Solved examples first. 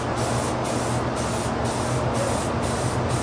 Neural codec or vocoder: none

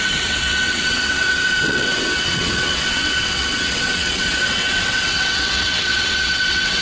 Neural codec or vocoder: vocoder, WaveNeXt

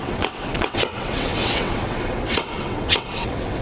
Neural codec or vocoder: vocoder, WaveNeXt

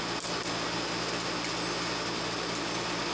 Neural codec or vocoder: none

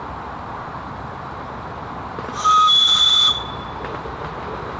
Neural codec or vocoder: none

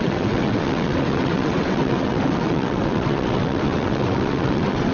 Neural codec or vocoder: vocoder, WaveNeXt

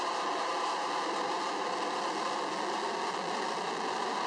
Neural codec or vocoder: none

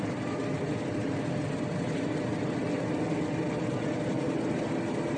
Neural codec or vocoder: none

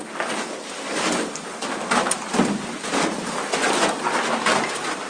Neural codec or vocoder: none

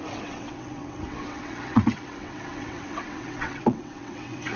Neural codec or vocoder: vocoder, WaveNeXt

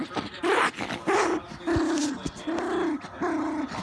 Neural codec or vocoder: none